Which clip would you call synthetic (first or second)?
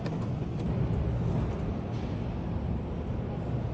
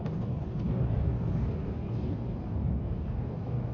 second